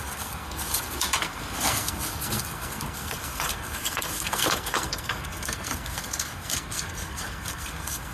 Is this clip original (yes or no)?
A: no